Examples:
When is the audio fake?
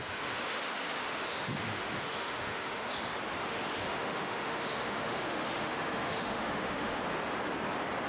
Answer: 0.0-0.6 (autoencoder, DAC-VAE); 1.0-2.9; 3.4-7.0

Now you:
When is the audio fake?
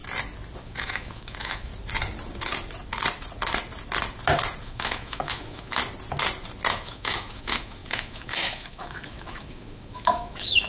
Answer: 0.6-1.7 (autoencoder, DAC-VAE); 4.6-5.8; 6.7-10.7